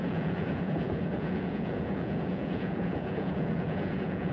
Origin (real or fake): fake